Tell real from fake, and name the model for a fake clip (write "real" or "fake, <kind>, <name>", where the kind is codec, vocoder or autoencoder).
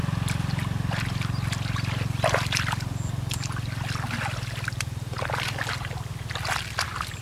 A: real